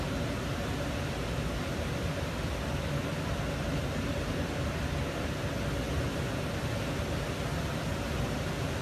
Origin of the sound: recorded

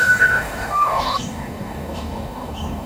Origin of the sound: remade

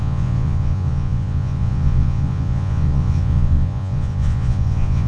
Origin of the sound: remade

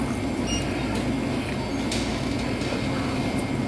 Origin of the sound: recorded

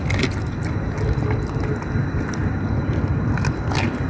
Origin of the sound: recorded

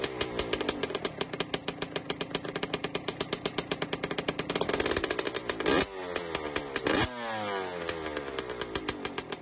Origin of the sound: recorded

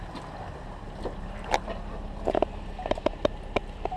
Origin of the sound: recorded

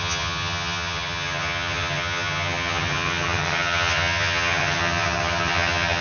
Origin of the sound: remade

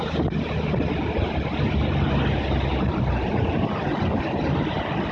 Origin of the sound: recorded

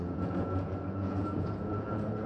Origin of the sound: remade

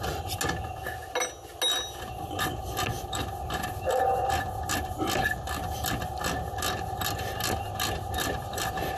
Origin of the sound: recorded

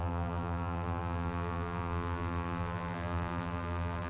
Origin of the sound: remade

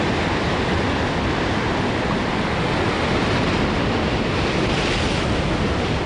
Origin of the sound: recorded